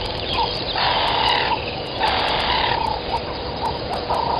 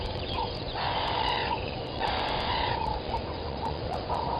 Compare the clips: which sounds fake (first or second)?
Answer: second